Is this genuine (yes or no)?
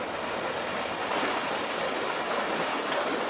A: yes